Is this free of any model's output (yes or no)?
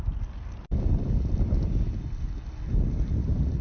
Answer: yes